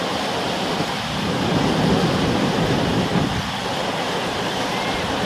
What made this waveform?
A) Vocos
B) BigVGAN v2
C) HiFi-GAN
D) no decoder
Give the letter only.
D